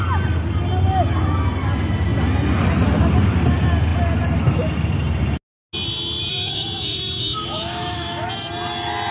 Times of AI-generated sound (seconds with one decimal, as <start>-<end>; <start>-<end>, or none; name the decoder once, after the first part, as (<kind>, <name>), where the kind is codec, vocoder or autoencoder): 6.3-8.3 (autoencoder, DAC-VAE)